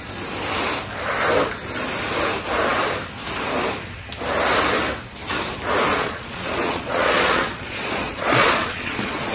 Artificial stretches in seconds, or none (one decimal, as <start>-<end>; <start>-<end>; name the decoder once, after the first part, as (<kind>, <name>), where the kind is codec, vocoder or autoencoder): 5.9-9.3 (vocoder, Vocos)